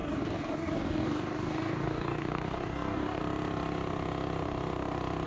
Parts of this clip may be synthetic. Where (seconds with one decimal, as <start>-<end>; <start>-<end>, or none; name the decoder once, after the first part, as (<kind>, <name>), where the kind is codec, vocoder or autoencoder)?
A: 0.0-3.2 (codec, DAC)